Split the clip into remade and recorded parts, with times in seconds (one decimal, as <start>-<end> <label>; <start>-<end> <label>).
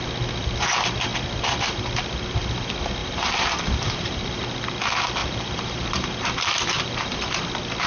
0.0-3.0 recorded; 3.0-4.4 remade; 4.4-5.2 recorded; 5.2-7.4 remade; 7.4-7.9 recorded